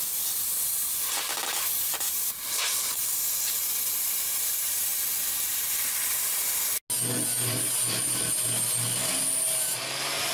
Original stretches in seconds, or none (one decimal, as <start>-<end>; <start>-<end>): 0.0-0.8; 3.2-10.3